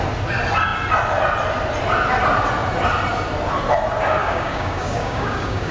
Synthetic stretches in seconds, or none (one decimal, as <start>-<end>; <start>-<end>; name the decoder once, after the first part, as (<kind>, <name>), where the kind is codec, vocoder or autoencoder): 4.2-5.7 (codec, DAC)